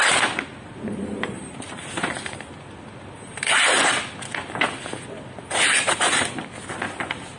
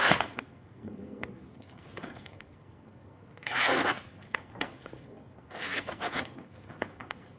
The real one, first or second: first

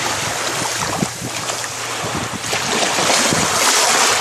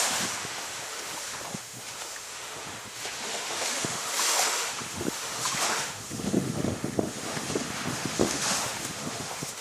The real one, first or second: first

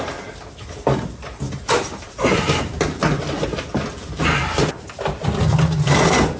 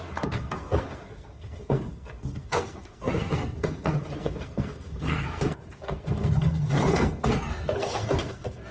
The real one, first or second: first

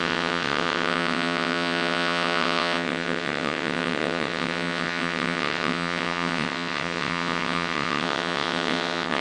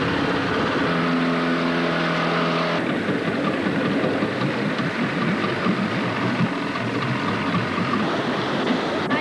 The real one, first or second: second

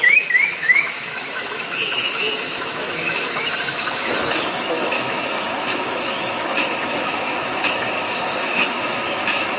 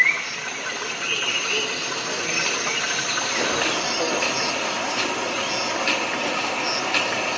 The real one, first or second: second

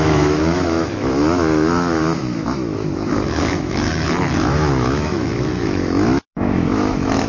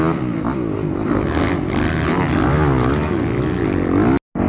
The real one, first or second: second